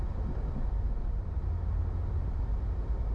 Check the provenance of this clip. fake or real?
real